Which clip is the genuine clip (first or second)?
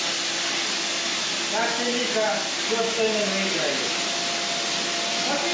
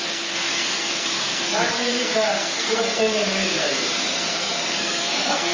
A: first